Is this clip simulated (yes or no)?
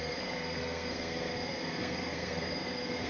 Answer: yes